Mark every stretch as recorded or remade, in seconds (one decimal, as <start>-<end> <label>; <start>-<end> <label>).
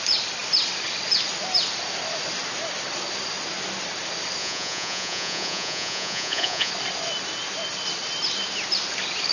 0.0-4.4 recorded; 4.4-6.7 remade; 6.7-9.3 recorded